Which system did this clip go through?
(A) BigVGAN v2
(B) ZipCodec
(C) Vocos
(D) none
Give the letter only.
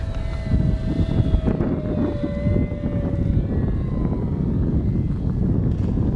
D